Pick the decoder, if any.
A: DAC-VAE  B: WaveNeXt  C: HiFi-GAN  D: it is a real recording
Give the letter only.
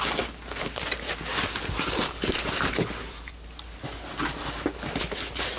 D